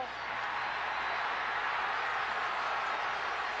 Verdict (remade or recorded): recorded